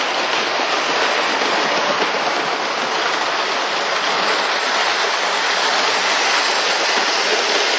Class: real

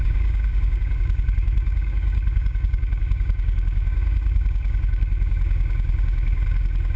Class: fake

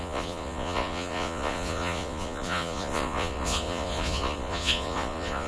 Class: fake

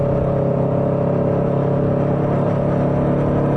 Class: real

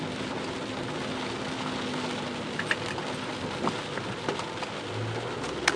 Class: real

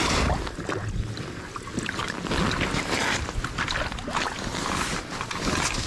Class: real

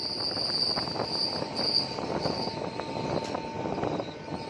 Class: real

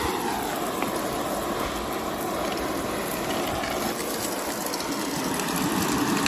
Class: real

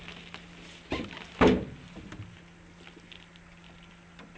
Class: real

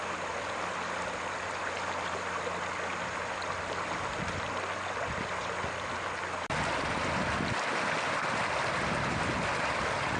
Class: real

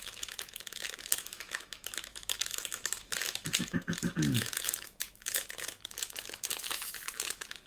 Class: fake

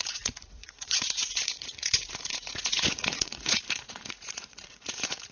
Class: fake